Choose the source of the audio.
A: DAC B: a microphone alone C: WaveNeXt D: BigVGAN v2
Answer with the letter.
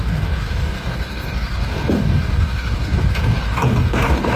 A